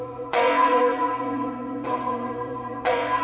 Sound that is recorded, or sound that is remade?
remade